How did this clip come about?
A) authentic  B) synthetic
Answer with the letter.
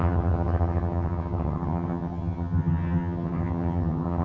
B